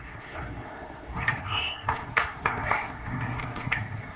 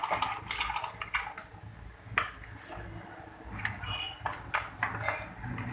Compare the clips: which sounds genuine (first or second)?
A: second